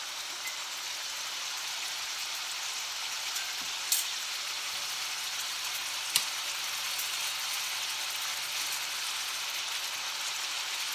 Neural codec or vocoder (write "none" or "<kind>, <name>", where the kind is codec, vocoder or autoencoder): none